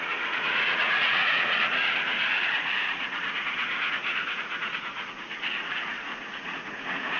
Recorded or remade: remade